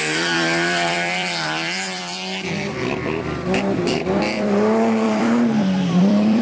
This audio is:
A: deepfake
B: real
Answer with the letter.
A